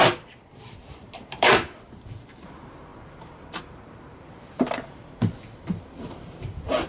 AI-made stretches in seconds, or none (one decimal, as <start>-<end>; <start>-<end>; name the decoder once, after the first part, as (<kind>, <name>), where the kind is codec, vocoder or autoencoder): 0.0-6.9 (vocoder, BigVGAN v2)